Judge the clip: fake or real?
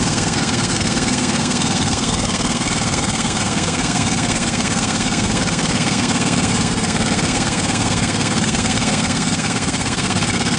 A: fake